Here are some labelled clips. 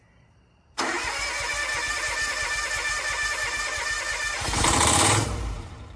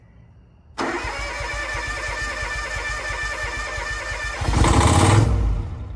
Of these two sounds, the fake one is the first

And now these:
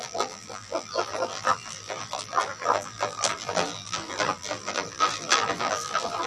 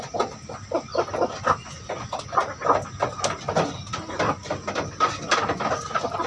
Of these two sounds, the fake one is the first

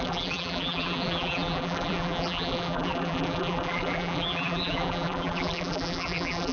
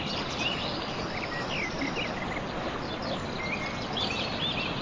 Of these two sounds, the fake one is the first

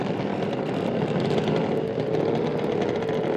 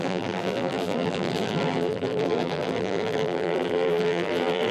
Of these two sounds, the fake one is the second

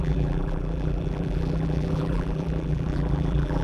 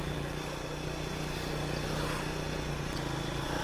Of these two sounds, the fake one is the first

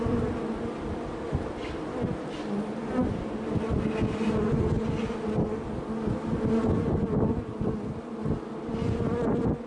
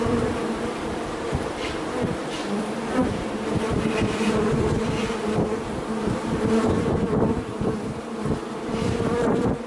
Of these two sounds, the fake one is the second